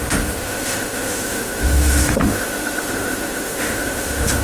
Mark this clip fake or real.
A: fake